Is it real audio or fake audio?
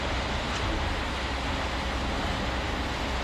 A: real